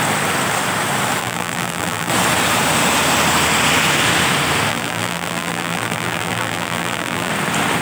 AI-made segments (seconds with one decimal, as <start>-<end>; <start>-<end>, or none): 1.2-2.1; 4.7-7.3